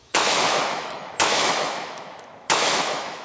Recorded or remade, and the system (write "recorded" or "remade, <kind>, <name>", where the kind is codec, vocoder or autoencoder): remade, autoencoder, DAC-VAE